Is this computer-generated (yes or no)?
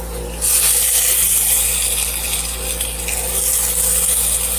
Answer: no